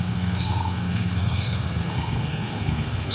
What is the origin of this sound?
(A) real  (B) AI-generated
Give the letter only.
B